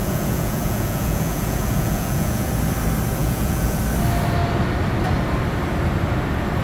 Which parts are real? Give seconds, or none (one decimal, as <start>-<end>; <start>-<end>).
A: 2.5-3.2; 3.8-6.6